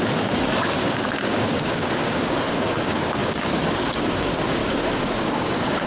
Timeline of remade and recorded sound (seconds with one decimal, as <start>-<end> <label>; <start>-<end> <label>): 0.0-5.9 remade